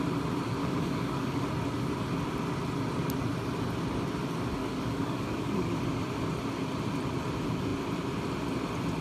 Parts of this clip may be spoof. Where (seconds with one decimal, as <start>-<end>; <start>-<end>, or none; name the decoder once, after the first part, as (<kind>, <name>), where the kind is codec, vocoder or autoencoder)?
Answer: 0.6-1.5 (codec, DAC); 4.6-5.8